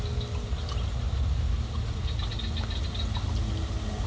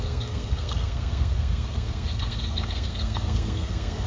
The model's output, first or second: second